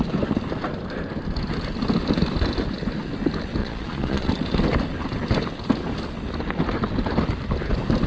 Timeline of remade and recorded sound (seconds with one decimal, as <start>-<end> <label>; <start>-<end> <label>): 0.0-3.6 recorded; 3.6-4.3 remade; 4.3-8.1 recorded